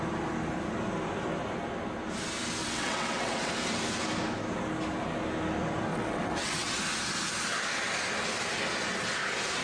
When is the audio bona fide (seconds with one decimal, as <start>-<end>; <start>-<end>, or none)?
0.0-2.6; 3.5-5.9; 6.8-9.6